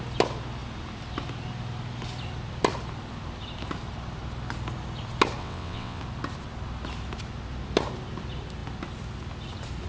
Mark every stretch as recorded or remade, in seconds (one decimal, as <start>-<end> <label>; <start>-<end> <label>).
0.0-5.4 recorded; 5.4-6.0 remade; 6.0-9.9 recorded